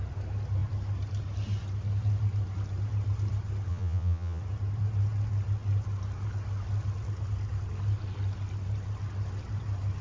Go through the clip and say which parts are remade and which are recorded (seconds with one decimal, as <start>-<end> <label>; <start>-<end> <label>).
0.0-3.7 recorded; 3.7-4.4 remade; 4.4-10.0 recorded